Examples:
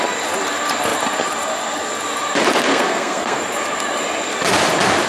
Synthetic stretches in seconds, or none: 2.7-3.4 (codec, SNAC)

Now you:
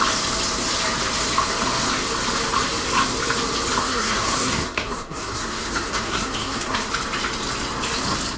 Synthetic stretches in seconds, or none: 3.8-6.9 (codec, SNAC)

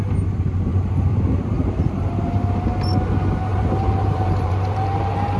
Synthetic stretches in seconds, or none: 0.7-2.2 (vocoder, BigVGAN v2); 3.5-5.4

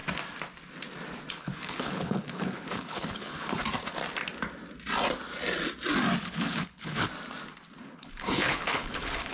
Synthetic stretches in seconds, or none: 1.3-3.6 (codec, HILCodec); 6.2-7.1; 7.8-9.3

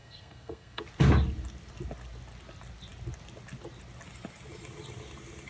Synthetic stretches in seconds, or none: 0.0-0.8 (codec, SNAC)

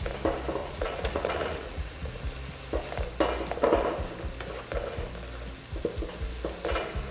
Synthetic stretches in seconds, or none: 0.6-2.2 (vocoder, Vocos)